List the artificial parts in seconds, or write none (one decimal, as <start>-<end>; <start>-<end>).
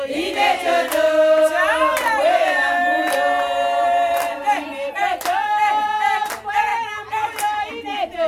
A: none